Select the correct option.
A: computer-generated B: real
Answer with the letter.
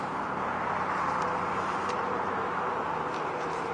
B